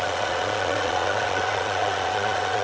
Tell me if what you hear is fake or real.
fake